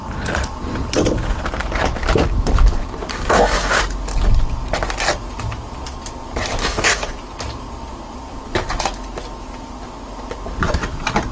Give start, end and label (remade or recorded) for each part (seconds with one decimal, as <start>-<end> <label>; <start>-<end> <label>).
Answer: 0.0-3.1 recorded; 3.1-3.8 remade; 3.8-6.6 recorded; 6.6-7.1 remade; 7.1-11.3 recorded